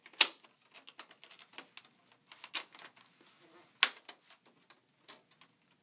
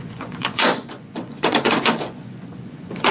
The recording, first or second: first